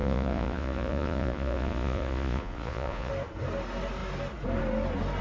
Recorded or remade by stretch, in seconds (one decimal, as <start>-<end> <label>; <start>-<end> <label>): 0.0-3.1 remade; 3.1-5.2 recorded